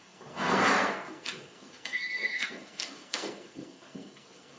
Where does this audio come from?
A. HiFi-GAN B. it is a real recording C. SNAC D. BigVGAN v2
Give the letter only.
C